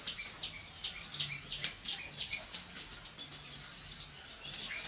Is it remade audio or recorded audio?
recorded